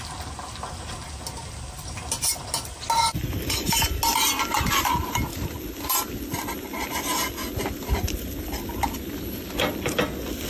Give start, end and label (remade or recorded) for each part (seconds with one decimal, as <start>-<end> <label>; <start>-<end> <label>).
0.0-10.5 recorded

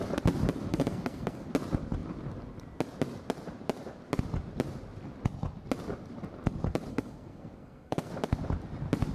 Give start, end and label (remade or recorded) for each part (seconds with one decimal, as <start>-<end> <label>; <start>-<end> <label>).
0.0-0.7 recorded; 0.7-1.5 remade; 1.5-6.9 recorded; 6.9-8.1 remade; 8.1-9.1 recorded

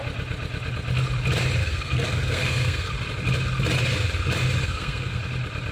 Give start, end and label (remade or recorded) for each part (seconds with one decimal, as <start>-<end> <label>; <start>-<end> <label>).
0.0-1.6 recorded; 1.6-2.9 remade; 2.9-4.6 recorded; 4.6-5.2 remade; 5.2-5.7 recorded

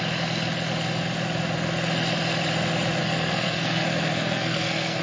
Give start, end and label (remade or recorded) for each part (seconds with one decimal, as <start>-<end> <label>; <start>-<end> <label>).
0.0-3.0 recorded; 3.0-5.0 remade

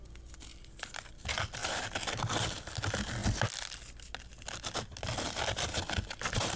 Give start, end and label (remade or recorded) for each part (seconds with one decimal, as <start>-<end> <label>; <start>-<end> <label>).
0.0-0.5 recorded; 0.5-1.1 remade; 1.1-6.6 recorded